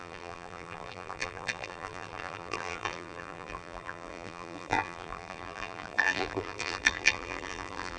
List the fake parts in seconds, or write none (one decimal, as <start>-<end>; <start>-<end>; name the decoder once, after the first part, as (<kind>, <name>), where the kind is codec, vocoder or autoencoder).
0.0-8.0 (vocoder, BigVGAN v2)